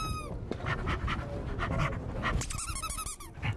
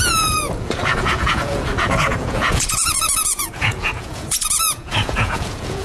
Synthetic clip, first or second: second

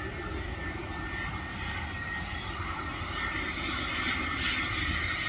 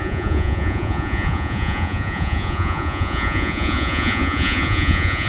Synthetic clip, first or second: second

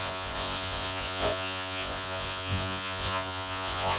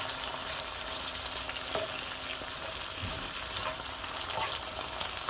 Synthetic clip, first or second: first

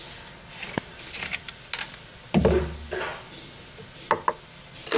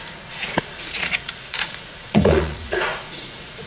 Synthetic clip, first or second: second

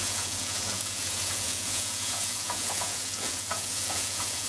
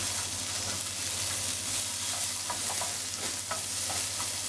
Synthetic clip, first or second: first